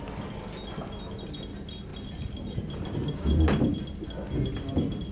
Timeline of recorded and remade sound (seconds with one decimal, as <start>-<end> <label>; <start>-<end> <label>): 0.0-5.1 recorded